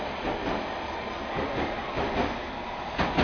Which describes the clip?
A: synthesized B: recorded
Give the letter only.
B